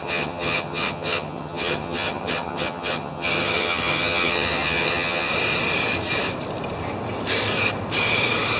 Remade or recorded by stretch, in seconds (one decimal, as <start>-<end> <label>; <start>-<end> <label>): 0.0-5.3 remade; 5.3-8.6 recorded